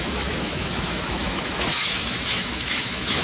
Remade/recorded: remade